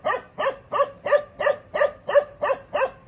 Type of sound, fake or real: real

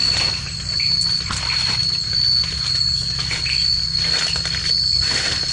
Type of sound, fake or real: real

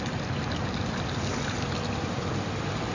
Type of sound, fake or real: real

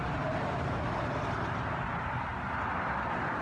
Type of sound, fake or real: real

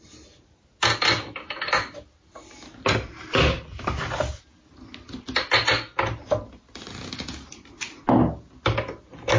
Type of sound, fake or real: real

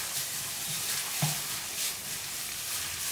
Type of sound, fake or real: fake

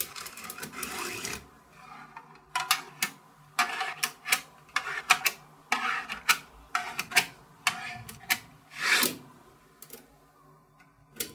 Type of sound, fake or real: real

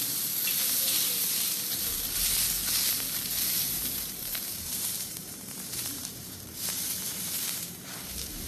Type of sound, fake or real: fake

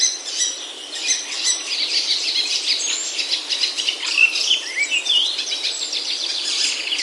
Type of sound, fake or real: fake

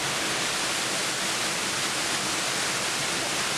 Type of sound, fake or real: real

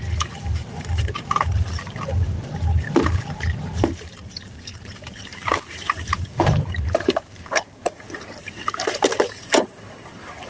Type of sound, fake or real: fake